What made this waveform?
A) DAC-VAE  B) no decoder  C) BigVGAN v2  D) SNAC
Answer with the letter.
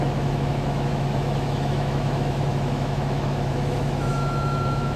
A